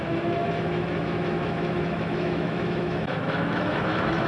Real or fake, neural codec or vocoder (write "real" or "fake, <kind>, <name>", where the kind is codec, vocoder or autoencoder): fake, autoencoder, DAC-VAE